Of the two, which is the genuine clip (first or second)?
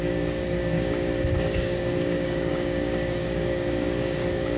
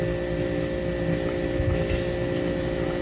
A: second